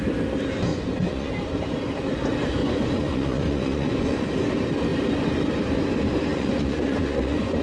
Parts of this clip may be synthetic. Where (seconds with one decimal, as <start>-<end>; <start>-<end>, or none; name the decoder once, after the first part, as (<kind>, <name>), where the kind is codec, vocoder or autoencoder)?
0.7-1.3 (vocoder, Vocos); 2.6-4.3; 6.3-7.6